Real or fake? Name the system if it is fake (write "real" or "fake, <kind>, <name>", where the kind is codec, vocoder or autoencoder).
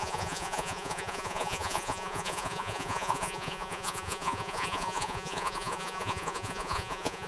fake, vocoder, Vocos